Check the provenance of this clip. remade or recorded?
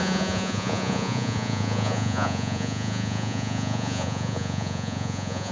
remade